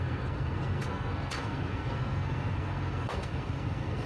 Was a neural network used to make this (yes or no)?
yes